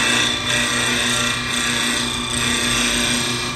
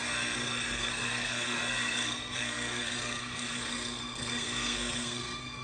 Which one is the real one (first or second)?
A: first